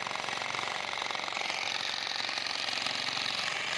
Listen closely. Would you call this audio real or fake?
real